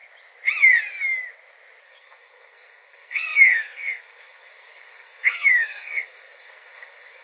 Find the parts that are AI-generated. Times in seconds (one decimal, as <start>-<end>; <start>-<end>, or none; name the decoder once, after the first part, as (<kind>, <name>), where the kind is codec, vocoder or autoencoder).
1.8-7.2 (codec, SNAC)